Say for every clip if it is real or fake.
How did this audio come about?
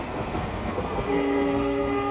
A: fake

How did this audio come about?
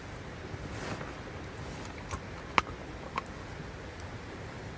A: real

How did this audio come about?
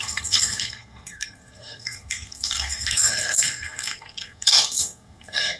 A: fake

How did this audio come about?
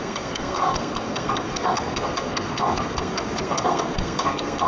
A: fake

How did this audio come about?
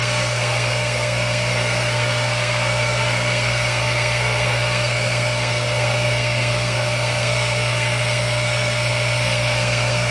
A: fake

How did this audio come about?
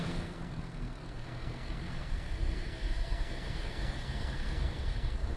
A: fake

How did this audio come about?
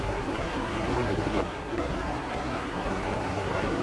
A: fake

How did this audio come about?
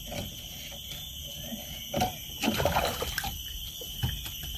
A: real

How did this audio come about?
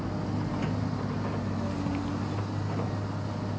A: real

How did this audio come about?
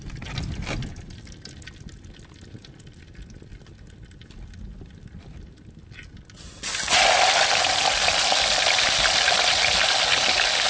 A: real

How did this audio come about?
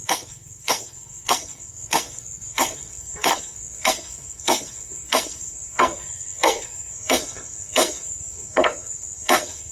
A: fake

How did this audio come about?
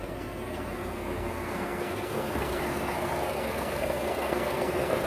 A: fake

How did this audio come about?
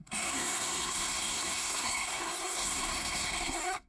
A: fake